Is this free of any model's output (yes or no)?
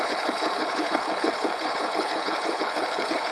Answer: no